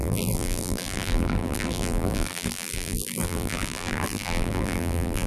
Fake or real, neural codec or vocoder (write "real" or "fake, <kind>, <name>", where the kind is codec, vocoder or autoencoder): fake, vocoder, BigVGAN v2